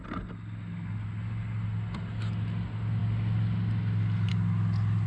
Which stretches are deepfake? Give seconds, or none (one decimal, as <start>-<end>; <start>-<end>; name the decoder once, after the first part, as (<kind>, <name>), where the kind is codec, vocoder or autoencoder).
none